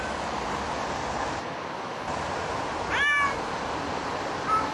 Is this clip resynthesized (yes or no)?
no